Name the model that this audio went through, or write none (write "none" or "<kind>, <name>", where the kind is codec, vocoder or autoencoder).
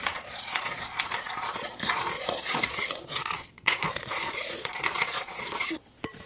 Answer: vocoder, Vocos